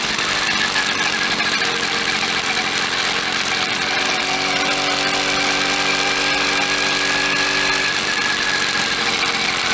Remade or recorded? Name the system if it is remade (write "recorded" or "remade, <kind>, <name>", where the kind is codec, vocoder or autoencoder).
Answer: recorded